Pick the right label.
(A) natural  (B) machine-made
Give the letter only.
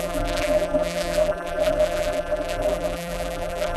B